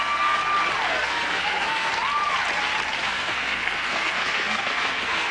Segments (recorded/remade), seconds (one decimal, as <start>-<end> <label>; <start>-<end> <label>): 0.0-0.4 remade; 0.4-0.9 recorded; 0.9-1.9 remade; 1.9-3.0 recorded; 3.0-5.3 remade